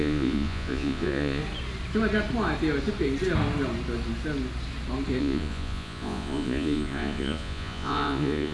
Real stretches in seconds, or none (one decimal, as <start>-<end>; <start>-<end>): 1.4-5.2